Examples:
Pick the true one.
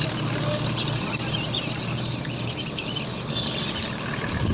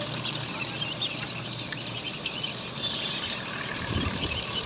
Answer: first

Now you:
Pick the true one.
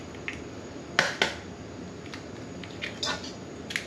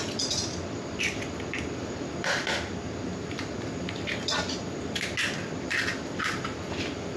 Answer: first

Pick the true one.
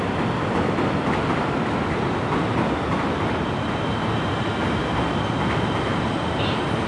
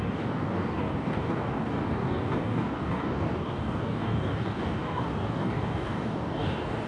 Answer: first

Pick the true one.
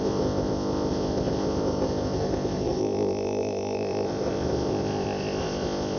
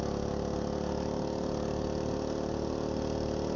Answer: second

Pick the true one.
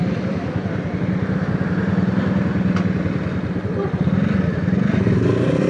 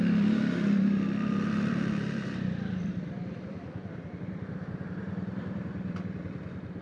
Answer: first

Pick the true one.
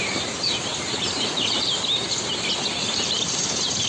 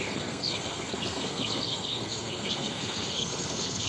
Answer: first